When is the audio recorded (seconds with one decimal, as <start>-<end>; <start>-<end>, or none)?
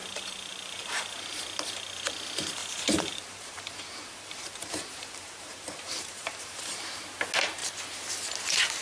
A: 1.4-2.6; 7.0-8.8